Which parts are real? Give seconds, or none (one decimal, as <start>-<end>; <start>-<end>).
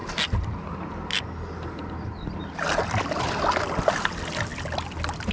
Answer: 0.0-5.3